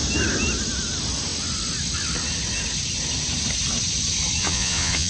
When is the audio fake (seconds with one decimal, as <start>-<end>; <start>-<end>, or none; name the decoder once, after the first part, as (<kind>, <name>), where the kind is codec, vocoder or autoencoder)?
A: 4.4-5.1 (vocoder, Vocos)